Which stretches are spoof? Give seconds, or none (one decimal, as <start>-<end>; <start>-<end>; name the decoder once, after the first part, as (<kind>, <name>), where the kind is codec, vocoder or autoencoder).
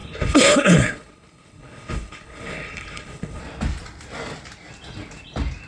0.0-3.4 (codec, HILCodec)